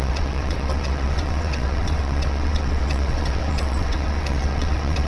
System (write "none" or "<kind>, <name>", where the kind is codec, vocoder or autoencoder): vocoder, WaveNeXt